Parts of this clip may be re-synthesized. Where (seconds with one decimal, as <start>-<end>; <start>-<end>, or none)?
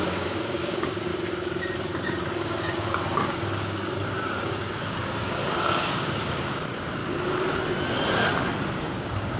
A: 0.0-1.1; 1.8-7.0; 8.8-9.4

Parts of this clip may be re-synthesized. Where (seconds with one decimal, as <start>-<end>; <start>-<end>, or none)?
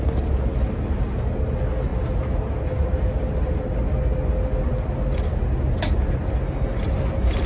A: none